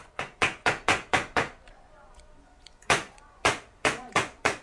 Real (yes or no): no